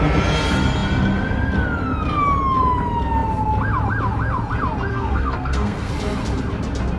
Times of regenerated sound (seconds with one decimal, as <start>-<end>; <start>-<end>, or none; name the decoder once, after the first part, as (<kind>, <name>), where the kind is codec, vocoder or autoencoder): 4.9-5.9 (codec, SNAC)